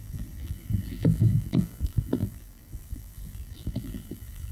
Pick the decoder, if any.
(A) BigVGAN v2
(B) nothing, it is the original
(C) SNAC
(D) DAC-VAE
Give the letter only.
A